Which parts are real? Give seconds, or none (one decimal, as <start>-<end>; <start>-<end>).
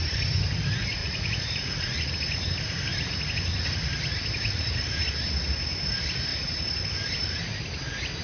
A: 0.0-1.0; 2.1-8.2